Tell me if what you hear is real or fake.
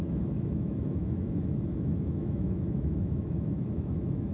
fake